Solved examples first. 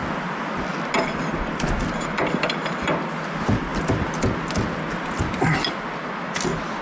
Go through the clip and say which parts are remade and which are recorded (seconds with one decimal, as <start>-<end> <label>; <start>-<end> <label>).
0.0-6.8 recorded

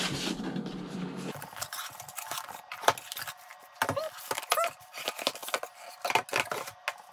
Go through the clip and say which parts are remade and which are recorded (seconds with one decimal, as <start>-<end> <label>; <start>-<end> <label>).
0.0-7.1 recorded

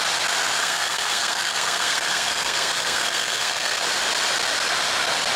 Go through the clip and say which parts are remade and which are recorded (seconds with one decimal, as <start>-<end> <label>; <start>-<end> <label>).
0.0-0.6 recorded; 0.6-3.8 remade; 3.8-5.4 recorded

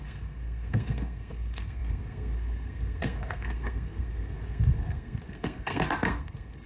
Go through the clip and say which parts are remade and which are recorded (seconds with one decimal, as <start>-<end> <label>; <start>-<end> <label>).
0.0-6.7 remade

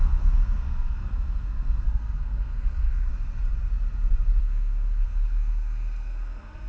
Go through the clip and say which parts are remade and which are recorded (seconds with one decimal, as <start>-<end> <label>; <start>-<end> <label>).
0.0-3.1 remade; 3.1-4.4 recorded; 4.4-6.7 remade

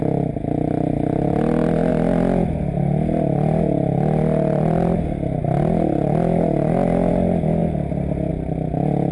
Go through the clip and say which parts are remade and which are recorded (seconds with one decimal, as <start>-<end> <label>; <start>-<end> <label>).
0.0-9.1 recorded

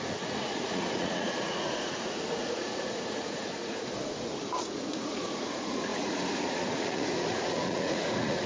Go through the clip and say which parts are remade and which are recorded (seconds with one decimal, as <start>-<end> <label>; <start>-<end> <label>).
0.0-8.5 remade

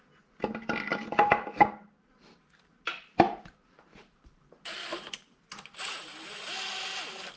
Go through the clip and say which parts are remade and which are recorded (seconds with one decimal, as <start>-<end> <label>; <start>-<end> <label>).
0.0-2.3 recorded; 2.3-4.3 remade; 4.3-4.8 recorded; 4.8-6.3 remade; 6.3-7.4 recorded